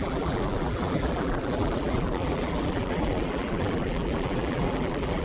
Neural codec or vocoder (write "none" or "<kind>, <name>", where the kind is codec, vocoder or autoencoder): vocoder, BigVGAN v2